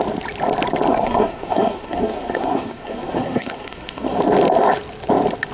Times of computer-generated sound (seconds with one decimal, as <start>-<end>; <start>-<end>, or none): 0.9-4.2